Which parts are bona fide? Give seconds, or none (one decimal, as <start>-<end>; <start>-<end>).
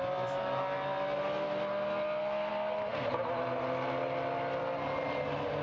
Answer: 0.0-5.6